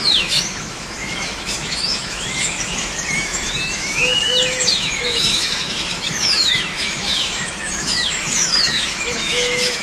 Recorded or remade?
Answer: remade